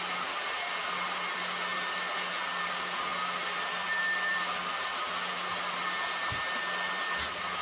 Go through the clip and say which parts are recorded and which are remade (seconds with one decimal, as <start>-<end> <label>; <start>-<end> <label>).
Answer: 0.0-7.6 recorded